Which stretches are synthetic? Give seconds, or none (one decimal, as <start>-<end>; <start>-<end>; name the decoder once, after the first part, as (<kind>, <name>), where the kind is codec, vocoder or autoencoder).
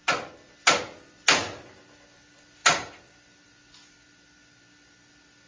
none